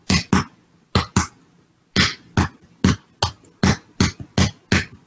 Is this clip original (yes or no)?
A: yes